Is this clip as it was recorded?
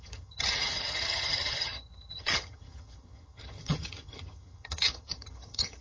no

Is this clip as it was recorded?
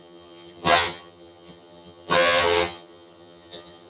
no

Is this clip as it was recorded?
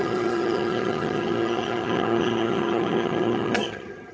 no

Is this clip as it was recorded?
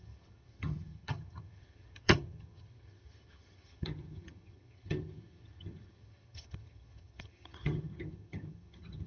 no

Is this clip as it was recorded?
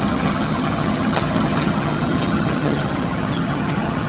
no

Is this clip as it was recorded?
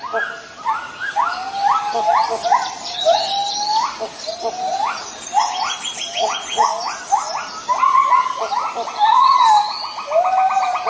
yes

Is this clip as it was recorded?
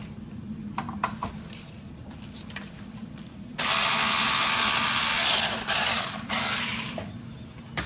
yes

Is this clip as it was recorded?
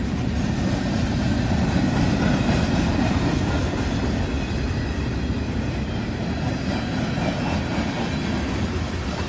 yes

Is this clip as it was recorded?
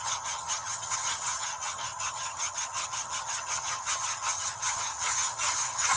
no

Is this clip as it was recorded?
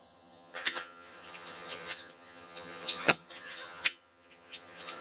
no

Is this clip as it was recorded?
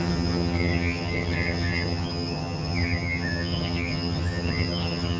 no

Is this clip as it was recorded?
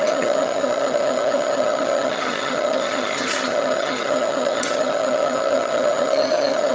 no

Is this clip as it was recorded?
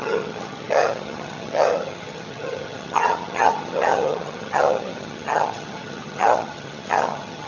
no